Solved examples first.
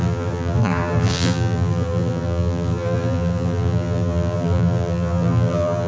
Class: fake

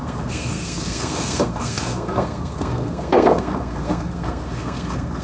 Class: fake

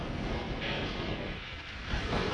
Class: fake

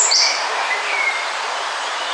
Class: fake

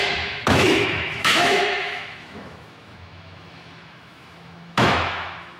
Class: fake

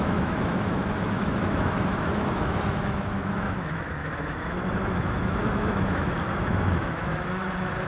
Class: fake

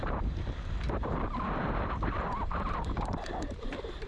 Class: fake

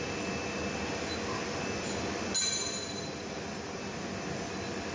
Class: real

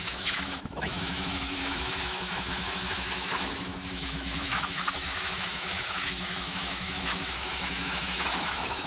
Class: fake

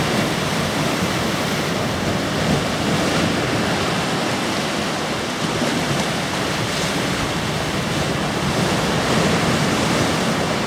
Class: real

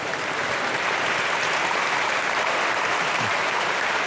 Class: fake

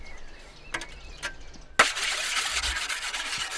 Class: real